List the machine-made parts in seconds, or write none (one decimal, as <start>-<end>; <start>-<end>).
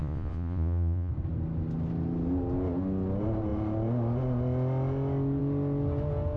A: 0.0-1.1